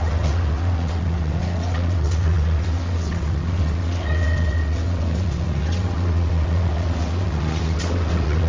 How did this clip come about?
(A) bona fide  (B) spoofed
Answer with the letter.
B